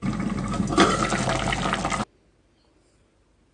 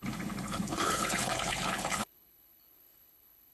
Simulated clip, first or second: second